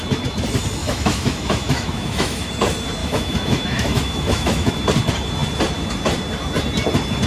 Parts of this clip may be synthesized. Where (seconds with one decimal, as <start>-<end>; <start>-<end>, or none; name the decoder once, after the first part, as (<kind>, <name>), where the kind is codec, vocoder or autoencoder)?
0.8-2.5 (autoencoder, DAC-VAE); 3.0-4.7